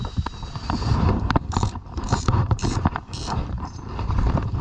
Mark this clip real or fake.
fake